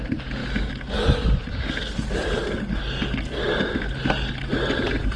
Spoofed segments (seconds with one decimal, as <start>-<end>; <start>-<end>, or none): none